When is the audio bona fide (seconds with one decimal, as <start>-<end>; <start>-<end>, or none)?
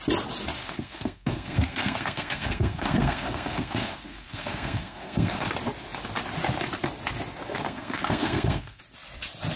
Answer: 0.0-0.6; 5.5-7.5; 8.8-9.6